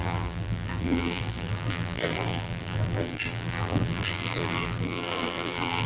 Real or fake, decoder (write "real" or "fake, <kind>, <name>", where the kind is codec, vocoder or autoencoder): fake, vocoder, BigVGAN v2